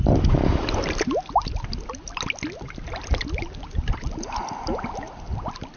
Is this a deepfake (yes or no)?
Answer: no